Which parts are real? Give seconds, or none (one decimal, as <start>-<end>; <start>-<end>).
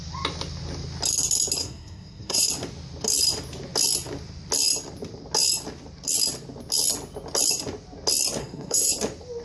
0.0-1.6; 2.5-8.4; 8.9-9.4